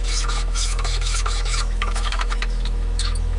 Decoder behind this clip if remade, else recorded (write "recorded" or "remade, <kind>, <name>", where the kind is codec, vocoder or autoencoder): remade, autoencoder, DAC-VAE